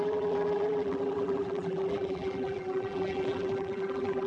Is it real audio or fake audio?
fake